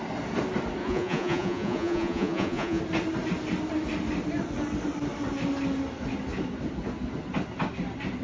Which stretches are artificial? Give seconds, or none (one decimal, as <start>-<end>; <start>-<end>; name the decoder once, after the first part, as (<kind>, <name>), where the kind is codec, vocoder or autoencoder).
0.8-2.8 (vocoder, Vocos)